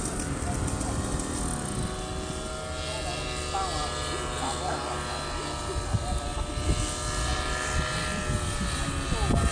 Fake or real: real